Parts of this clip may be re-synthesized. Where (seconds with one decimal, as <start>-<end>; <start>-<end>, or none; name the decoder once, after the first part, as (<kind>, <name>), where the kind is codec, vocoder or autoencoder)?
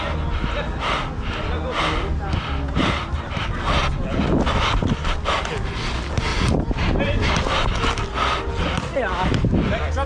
none